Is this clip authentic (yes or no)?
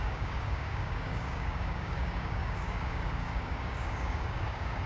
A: no